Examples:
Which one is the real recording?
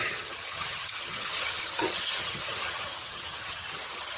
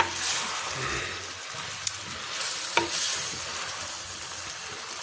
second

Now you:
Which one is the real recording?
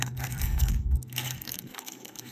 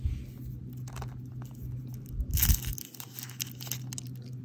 second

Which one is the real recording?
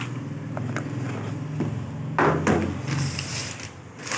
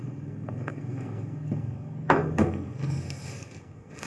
first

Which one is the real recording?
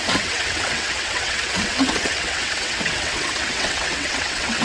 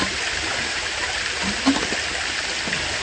second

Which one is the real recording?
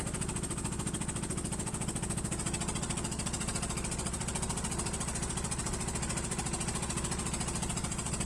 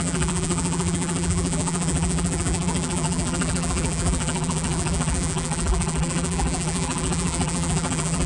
first